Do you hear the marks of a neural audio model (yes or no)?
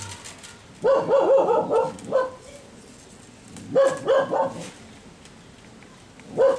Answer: no